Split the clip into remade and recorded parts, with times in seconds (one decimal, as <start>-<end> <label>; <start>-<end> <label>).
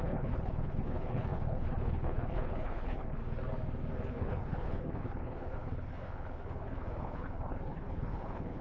0.0-3.2 remade; 3.2-4.1 recorded; 4.1-8.6 remade